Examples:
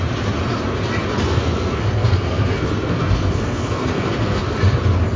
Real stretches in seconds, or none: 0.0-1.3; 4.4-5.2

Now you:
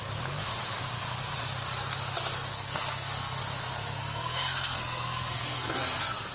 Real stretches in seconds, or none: 0.0-2.5; 3.4-4.0